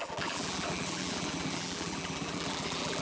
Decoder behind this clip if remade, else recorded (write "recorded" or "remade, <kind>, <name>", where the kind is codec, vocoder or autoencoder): remade, vocoder, BigVGAN v2